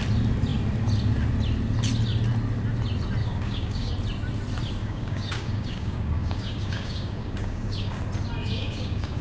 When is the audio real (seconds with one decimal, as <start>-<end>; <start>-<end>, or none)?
0.0-3.2; 3.9-4.8; 8.0-8.4